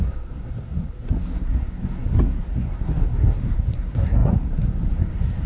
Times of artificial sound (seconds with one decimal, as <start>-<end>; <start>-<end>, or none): 0.0-5.5